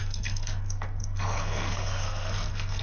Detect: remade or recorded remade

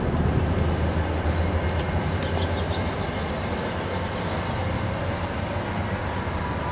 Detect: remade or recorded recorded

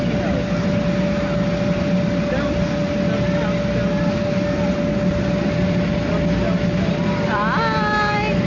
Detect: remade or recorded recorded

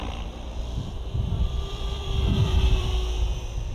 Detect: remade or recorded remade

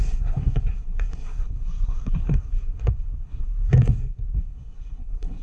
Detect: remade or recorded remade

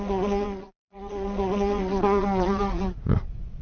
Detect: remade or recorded remade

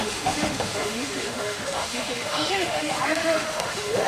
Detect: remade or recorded remade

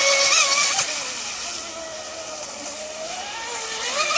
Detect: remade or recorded recorded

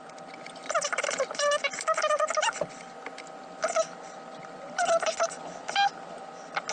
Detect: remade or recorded recorded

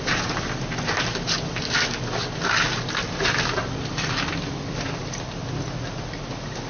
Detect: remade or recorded recorded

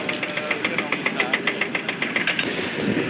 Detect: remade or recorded recorded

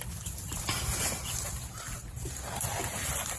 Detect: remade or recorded recorded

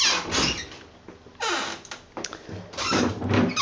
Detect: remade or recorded recorded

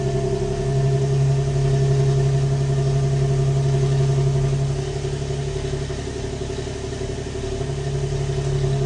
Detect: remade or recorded recorded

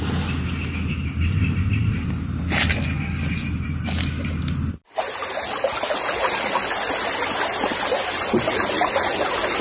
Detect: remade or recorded recorded